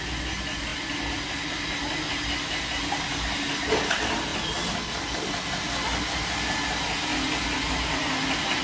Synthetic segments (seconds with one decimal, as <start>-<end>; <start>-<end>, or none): none